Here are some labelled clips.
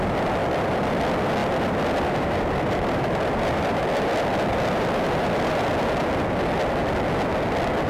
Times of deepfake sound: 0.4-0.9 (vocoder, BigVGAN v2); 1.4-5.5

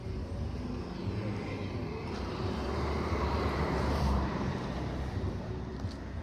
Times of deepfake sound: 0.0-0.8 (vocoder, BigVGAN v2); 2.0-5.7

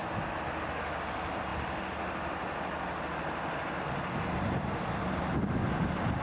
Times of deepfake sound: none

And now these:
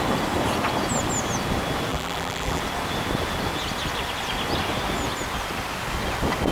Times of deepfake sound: 1.9-2.6 (vocoder, BigVGAN v2)

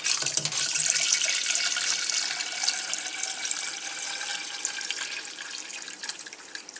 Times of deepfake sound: 0.0-0.8 (vocoder, BigVGAN v2); 2.9-4.3; 5.8-6.8